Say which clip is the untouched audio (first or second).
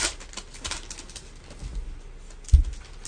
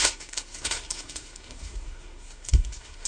first